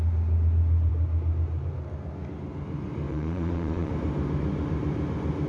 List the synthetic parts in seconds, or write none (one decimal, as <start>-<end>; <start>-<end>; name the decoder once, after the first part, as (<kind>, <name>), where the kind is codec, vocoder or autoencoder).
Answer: 3.1-3.9 (vocoder, Vocos)